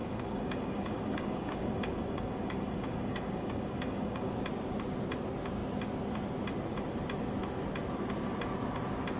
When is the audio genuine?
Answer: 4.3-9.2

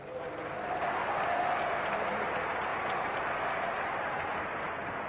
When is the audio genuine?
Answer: 0.0-1.0; 2.3-5.1

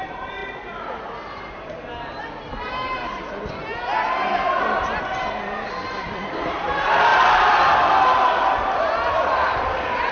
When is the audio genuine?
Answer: 0.0-10.1

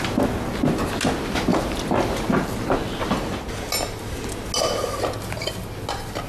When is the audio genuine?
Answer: 0.0-6.3